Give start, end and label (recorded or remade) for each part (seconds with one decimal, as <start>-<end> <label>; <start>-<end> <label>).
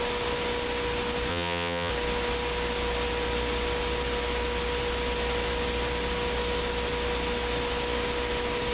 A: 0.0-1.3 recorded; 1.3-1.9 remade; 1.9-8.7 recorded